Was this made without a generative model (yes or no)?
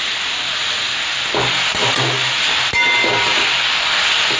yes